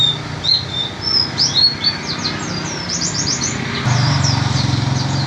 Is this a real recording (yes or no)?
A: yes